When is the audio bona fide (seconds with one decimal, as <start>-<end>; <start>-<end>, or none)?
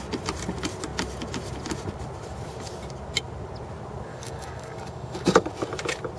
0.0-4.1; 5.5-6.2